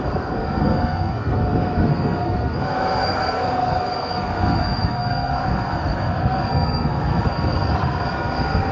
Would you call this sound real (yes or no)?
no